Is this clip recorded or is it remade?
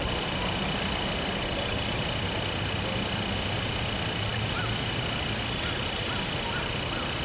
recorded